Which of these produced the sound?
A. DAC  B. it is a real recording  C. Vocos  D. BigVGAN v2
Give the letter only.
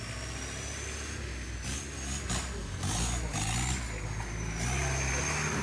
B